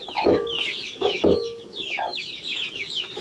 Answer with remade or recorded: remade